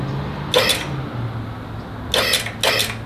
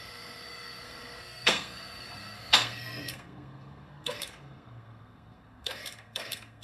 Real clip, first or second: first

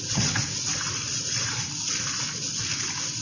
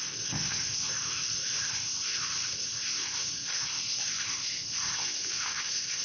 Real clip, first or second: first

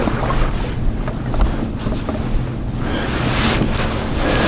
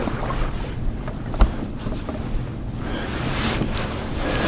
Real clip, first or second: first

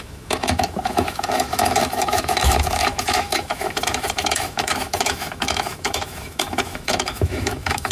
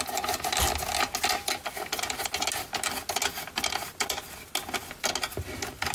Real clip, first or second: second